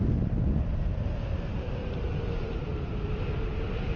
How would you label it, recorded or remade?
recorded